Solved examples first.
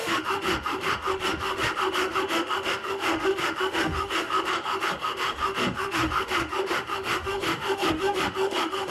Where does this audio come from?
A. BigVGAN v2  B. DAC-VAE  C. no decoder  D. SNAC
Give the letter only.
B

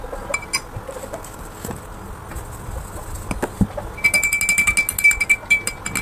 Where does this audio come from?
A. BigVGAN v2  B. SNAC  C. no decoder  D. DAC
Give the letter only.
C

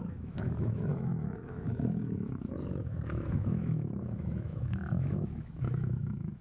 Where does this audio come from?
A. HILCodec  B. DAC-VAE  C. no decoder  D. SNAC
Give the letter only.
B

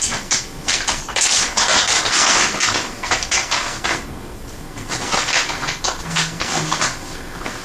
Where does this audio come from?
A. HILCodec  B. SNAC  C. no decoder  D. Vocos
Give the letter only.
B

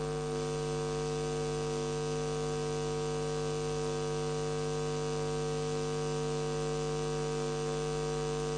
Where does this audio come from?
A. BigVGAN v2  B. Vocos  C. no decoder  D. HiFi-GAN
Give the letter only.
C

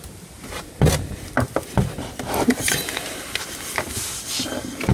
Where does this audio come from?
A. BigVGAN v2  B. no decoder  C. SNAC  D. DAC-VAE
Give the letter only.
B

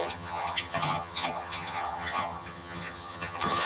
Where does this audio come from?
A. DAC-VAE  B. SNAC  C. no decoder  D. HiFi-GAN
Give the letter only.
D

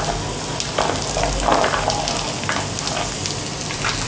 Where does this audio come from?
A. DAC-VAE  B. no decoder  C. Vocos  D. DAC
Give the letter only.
B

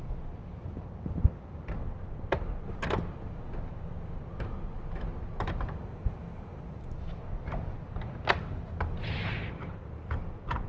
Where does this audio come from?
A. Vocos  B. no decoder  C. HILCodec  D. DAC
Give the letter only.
B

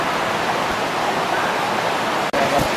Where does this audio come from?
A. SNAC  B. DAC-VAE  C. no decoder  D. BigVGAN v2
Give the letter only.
C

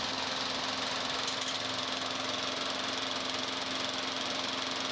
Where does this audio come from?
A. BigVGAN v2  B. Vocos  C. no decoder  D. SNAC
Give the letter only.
C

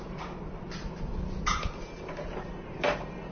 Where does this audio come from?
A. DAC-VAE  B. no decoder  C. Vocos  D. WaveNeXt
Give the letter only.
B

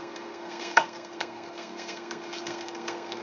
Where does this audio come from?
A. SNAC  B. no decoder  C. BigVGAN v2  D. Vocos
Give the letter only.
A